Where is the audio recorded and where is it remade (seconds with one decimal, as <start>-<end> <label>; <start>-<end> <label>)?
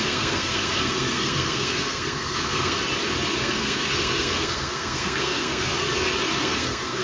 0.0-2.8 remade; 2.8-3.4 recorded; 3.4-5.9 remade; 5.9-6.4 recorded; 6.4-7.0 remade